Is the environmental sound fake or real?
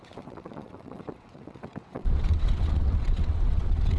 fake